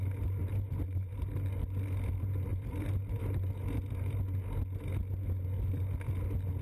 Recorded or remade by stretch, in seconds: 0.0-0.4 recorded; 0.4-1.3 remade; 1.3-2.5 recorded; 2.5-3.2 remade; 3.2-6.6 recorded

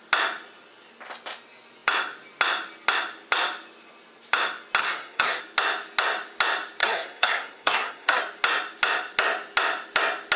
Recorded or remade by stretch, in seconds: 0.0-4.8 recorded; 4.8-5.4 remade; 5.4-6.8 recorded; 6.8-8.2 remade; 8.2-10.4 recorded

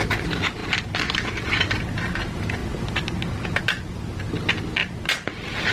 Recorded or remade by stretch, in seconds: 0.0-5.7 recorded

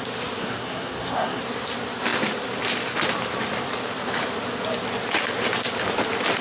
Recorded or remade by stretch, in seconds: 0.0-0.4 recorded; 0.4-1.4 remade; 1.4-6.4 recorded